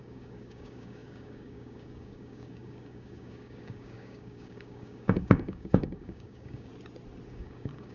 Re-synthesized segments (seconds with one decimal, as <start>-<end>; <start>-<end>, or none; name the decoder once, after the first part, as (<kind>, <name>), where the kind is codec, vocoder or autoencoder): 0.0-6.7 (codec, DAC); 7.3-7.9